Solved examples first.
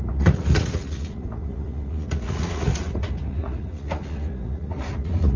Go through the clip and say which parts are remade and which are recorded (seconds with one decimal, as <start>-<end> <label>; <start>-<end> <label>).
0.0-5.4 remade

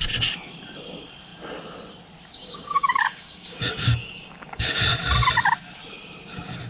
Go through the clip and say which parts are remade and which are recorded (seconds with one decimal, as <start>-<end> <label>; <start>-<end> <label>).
0.0-2.4 recorded; 2.4-4.8 remade; 4.8-6.7 recorded

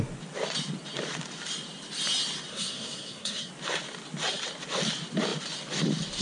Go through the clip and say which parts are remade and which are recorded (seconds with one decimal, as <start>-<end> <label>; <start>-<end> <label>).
0.0-2.5 recorded; 2.5-3.5 remade; 3.5-6.2 recorded

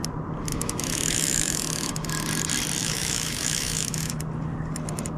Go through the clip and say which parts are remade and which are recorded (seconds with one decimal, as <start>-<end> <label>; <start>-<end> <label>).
0.0-0.5 recorded; 0.5-1.9 remade; 1.9-2.8 recorded; 2.8-4.2 remade; 4.2-5.2 recorded

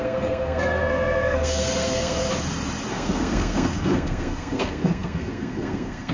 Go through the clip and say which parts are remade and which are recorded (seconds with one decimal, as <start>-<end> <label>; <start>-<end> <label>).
0.0-2.2 remade; 2.2-2.9 recorded; 2.9-6.1 remade

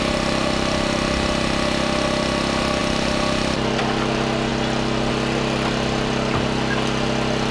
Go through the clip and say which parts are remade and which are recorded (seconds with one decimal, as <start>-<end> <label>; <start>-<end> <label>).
0.0-7.5 recorded

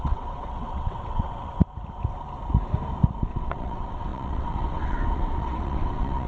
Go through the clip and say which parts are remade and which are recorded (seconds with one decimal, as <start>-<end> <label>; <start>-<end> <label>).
0.0-1.6 remade; 1.6-3.2 recorded; 3.2-6.3 remade

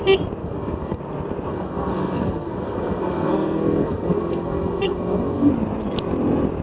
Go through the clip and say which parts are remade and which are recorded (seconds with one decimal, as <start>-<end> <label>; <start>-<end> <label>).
0.0-0.4 recorded; 0.4-1.0 remade; 1.0-1.5 recorded; 1.5-5.5 remade; 5.5-6.6 recorded